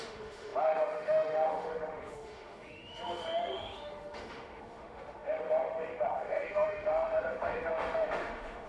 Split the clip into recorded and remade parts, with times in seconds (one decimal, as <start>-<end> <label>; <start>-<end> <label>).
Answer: 0.0-8.7 remade